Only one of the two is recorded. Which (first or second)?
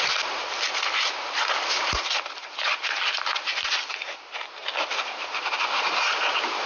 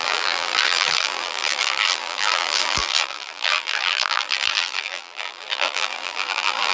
first